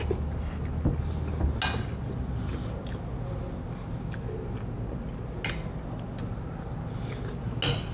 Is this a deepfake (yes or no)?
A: no